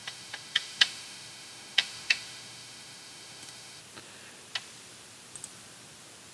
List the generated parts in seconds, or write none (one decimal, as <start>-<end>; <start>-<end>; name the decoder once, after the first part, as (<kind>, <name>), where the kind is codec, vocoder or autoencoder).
0.0-3.8 (autoencoder, DAC-VAE)